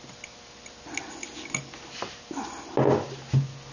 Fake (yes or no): no